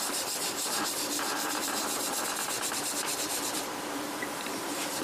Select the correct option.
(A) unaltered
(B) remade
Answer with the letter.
B